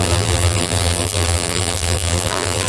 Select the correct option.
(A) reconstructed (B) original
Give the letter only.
A